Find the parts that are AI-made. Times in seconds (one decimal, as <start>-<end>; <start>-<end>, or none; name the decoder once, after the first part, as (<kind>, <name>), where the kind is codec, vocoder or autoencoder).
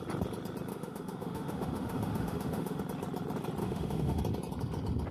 0.7-2.8 (autoencoder, DAC-VAE); 3.6-4.2